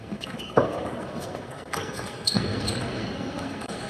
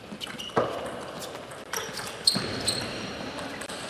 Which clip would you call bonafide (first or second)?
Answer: second